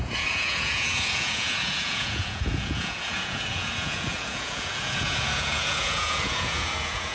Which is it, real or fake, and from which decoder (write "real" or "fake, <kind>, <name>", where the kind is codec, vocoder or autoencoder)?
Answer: fake, vocoder, Vocos